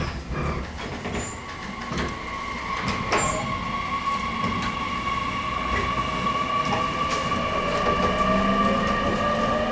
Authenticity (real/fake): real